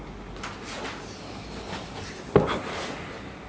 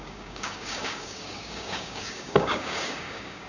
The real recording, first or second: first